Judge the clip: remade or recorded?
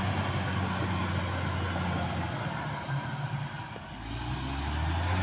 recorded